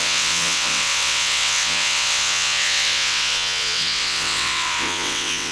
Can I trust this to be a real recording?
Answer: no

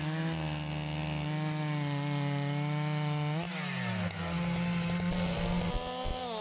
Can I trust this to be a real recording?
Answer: yes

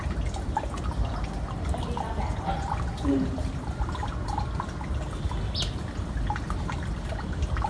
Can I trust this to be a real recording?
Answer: yes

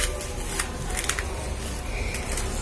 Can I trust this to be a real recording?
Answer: yes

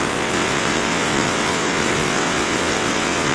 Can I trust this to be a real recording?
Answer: no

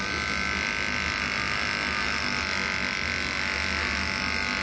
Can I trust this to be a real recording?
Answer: yes